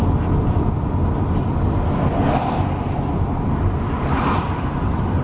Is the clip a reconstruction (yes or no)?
no